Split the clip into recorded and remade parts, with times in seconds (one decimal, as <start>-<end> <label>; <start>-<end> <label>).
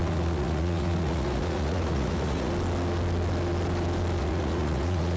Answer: 0.0-2.5 remade; 2.5-4.2 recorded; 4.2-5.2 remade